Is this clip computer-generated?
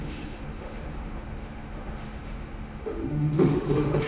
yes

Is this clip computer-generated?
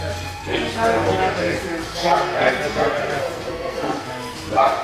yes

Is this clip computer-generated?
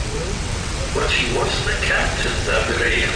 yes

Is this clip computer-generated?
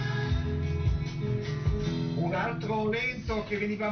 no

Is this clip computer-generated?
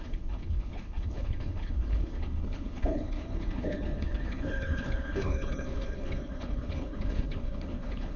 yes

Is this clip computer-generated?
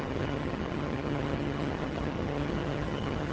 yes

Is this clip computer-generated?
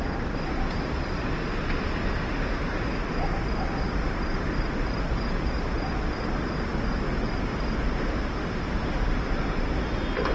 no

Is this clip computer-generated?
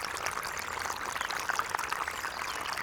no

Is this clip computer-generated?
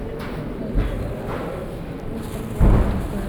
no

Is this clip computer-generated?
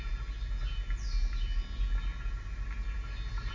no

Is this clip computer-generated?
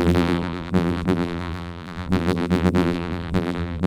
yes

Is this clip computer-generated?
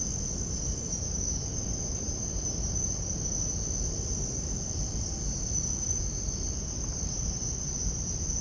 no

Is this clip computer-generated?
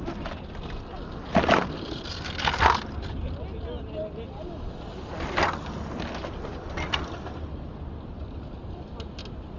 no